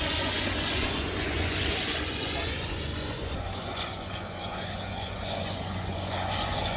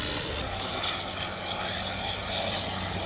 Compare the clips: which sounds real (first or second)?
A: second